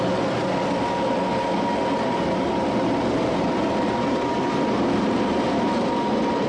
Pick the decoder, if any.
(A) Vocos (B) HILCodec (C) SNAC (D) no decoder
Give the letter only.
D